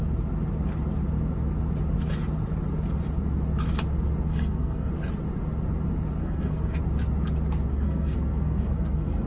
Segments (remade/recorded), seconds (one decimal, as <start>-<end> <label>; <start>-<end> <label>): 0.0-4.3 recorded; 4.3-4.9 remade; 4.9-6.2 recorded; 6.2-6.8 remade; 6.8-7.7 recorded; 7.7-9.3 remade